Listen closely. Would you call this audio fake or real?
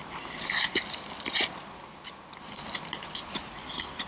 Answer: real